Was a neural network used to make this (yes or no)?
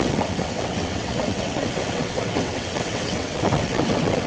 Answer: yes